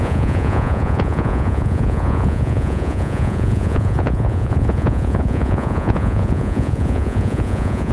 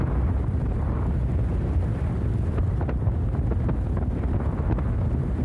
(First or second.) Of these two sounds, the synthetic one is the first